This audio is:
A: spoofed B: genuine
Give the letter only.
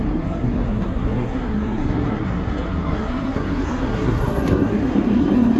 A